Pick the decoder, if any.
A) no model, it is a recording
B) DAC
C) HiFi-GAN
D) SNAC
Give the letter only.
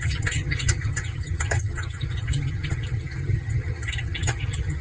C